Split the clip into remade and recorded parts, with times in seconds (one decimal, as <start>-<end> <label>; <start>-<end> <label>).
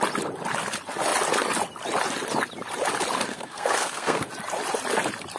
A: 0.0-3.3 recorded; 3.3-4.3 remade; 4.3-5.4 recorded